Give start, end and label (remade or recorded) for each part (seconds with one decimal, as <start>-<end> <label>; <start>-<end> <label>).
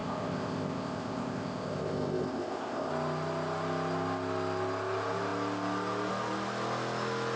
0.0-2.9 remade; 2.9-7.4 recorded